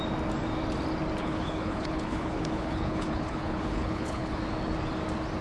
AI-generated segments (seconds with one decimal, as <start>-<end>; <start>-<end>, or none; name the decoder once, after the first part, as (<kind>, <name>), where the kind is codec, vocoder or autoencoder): 1.2-4.4 (codec, HILCodec)